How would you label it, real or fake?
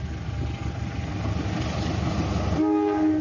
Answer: real